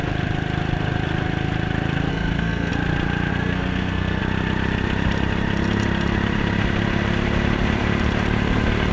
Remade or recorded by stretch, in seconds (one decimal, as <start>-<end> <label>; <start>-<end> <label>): 0.0-2.1 recorded; 2.1-2.7 remade; 2.7-3.3 recorded; 3.3-4.2 remade; 4.2-8.9 recorded

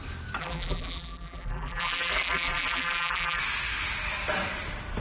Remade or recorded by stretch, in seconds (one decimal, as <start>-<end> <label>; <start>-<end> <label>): 0.0-0.4 recorded; 0.4-3.4 remade; 3.4-5.0 recorded

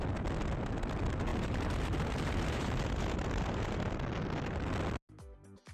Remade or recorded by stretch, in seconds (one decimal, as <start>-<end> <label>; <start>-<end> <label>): 0.0-1.3 recorded; 1.3-3.9 remade; 3.9-5.7 recorded

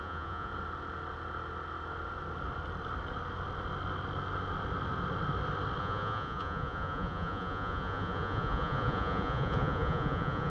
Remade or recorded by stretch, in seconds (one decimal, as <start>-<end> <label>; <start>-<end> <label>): 0.0-0.5 remade; 0.5-5.8 recorded; 5.8-10.5 remade

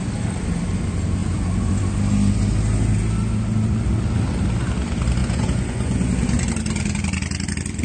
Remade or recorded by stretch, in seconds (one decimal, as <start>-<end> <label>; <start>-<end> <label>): 0.0-1.2 recorded; 1.2-1.7 remade; 1.7-5.2 recorded; 5.2-6.1 remade; 6.1-7.8 recorded